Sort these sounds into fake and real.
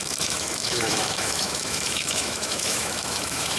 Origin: fake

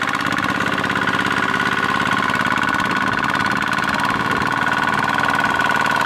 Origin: real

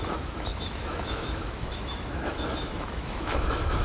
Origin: fake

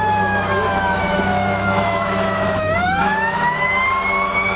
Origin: fake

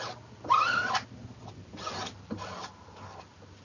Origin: real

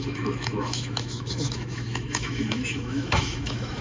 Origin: fake